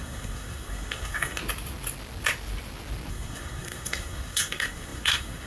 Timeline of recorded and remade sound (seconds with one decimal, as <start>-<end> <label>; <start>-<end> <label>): 0.0-1.4 remade; 1.4-3.1 recorded; 3.1-5.5 remade